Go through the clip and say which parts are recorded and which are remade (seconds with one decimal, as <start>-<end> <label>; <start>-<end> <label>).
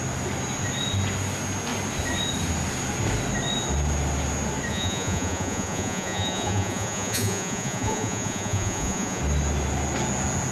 0.0-4.7 recorded; 4.7-9.2 remade; 9.2-10.5 recorded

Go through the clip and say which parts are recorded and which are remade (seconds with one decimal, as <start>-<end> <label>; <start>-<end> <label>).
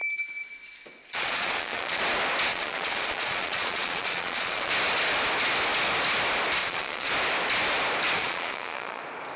0.0-1.0 recorded; 1.0-2.0 remade; 2.0-2.5 recorded; 2.5-4.7 remade; 4.7-6.6 recorded; 6.6-7.1 remade; 7.1-8.2 recorded; 8.2-9.0 remade; 9.0-9.4 recorded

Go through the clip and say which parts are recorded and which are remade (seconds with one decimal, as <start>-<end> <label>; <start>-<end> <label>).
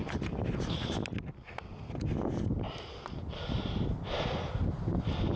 0.0-5.4 recorded